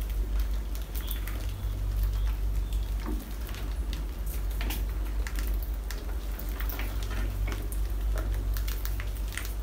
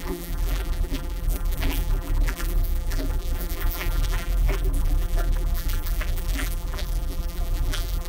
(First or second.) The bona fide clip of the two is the first